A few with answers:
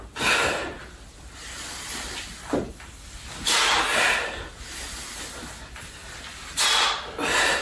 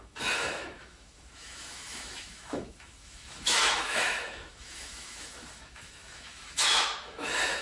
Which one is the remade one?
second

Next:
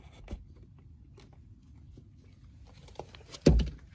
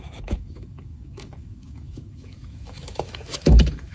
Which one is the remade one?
second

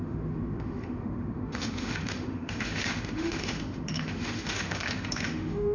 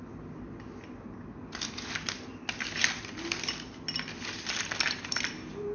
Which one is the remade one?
first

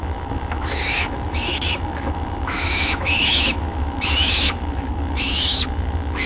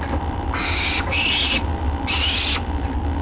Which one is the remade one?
first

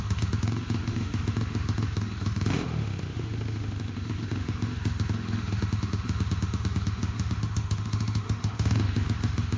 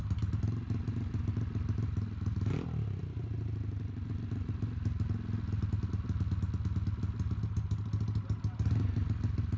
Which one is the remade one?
first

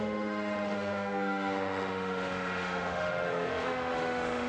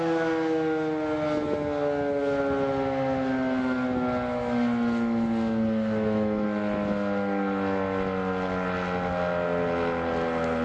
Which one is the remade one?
first